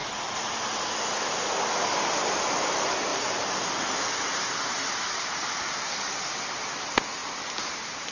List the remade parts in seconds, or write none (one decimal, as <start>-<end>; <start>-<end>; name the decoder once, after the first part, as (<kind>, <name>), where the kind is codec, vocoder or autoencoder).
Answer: none